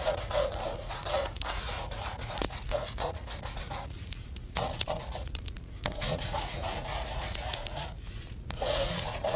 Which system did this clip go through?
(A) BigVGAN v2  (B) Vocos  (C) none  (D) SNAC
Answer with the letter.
B